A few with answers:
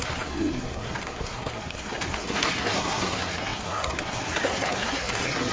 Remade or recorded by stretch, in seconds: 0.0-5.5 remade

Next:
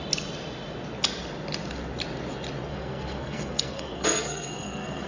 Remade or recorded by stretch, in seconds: 0.0-2.7 recorded; 2.7-5.1 remade

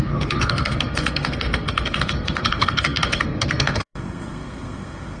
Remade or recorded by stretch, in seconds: 0.0-5.2 remade

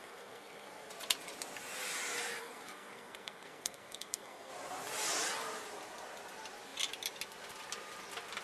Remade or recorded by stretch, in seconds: 0.0-0.9 remade; 0.9-2.4 recorded; 2.4-4.5 remade; 4.5-8.4 recorded

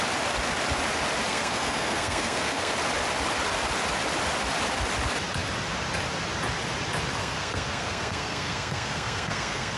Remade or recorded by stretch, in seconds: 0.0-1.3 recorded; 1.3-2.7 remade; 2.7-7.2 recorded; 7.2-9.8 remade